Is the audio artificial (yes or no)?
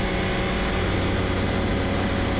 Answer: no